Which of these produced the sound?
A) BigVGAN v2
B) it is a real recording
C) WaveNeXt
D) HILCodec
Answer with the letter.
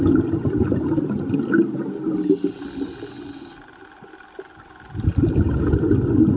B